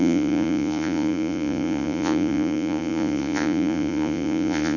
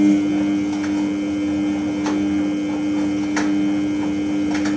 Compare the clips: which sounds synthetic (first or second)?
first